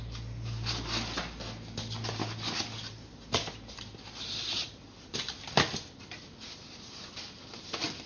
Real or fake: real